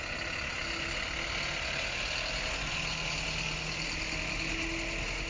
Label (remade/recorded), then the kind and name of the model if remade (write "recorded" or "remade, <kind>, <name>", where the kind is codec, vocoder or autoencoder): recorded